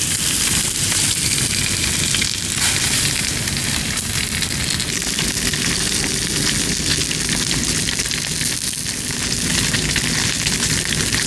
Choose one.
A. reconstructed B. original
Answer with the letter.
B